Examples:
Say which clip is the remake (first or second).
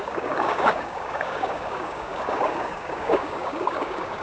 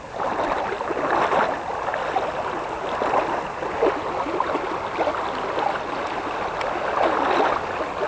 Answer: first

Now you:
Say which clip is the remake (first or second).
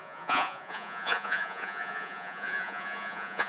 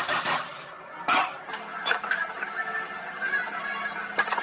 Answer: first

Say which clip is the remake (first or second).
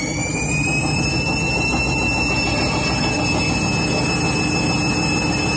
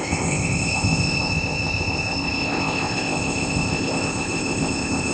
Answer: second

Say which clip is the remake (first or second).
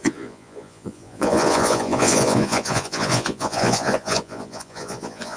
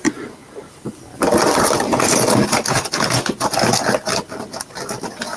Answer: first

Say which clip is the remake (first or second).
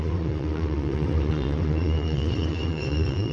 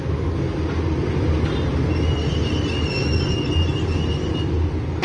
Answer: first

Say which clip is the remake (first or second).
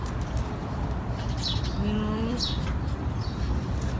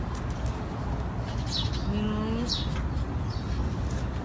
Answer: first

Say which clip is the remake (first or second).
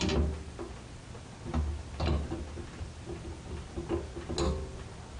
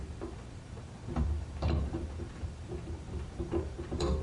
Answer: second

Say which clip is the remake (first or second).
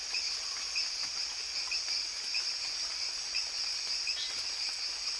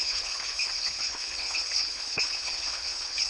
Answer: second